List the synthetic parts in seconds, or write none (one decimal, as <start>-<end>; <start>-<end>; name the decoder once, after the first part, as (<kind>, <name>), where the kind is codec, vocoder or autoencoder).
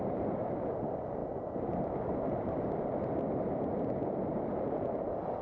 none